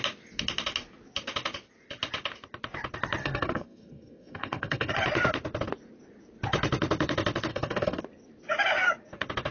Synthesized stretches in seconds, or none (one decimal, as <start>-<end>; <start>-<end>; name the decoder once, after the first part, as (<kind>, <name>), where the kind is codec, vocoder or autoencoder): 3.2-4.9 (codec, SNAC); 7.5-8.0